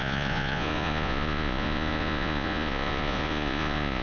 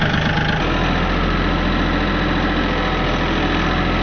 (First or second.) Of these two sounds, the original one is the second